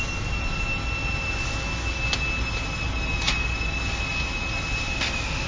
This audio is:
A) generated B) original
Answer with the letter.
B